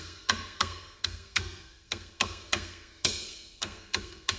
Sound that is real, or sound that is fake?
fake